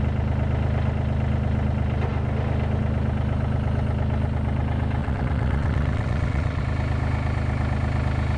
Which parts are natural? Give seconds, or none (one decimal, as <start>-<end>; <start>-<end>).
0.0-5.0; 6.6-8.4